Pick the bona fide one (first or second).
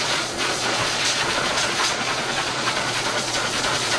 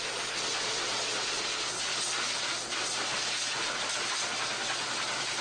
second